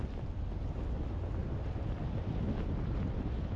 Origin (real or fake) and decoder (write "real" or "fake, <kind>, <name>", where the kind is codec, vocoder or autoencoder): real